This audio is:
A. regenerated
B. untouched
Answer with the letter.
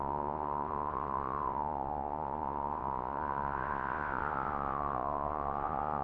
A